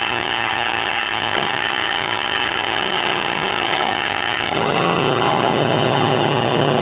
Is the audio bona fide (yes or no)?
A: no